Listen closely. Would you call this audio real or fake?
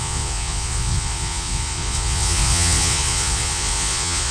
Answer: fake